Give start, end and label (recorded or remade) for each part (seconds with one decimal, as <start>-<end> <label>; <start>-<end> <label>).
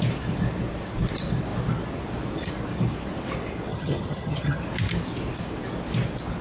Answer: 0.0-3.7 recorded; 3.7-4.6 remade; 4.6-6.4 recorded